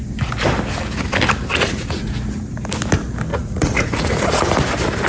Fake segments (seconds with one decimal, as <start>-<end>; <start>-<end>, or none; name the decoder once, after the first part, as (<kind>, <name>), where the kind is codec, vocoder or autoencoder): 1.5-2.1 (vocoder, Vocos); 3.3-4.4